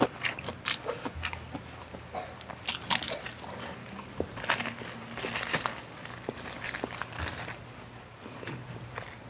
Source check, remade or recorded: recorded